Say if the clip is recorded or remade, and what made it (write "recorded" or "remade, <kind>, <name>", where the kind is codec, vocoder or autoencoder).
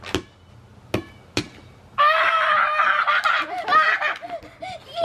recorded